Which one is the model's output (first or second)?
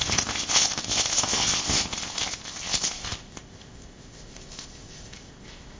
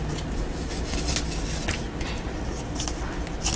first